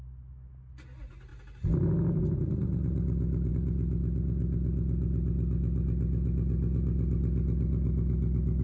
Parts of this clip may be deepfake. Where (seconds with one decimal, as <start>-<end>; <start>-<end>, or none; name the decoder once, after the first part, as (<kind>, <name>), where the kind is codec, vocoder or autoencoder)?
none